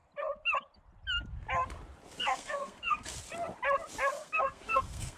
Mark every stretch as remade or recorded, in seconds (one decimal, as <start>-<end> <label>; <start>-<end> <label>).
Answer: 0.0-2.2 recorded; 2.2-3.1 remade; 3.1-4.1 recorded; 4.1-5.2 remade